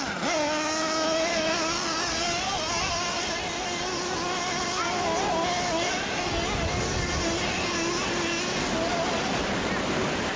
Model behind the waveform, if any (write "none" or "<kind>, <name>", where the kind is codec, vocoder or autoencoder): none